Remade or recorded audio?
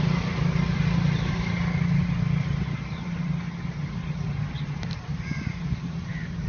recorded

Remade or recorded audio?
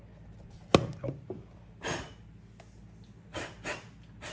recorded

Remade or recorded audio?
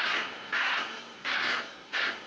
remade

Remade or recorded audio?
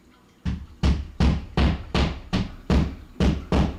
recorded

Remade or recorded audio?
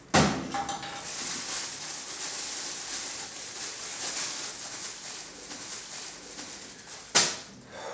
recorded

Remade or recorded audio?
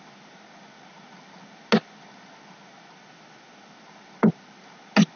recorded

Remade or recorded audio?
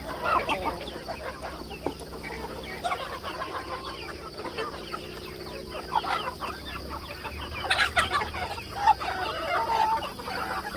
recorded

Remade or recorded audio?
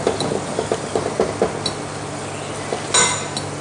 recorded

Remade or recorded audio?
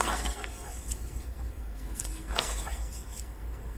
remade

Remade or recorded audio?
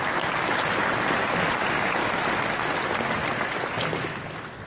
recorded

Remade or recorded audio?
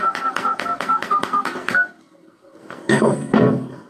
remade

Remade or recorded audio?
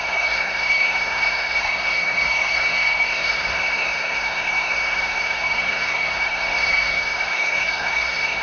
remade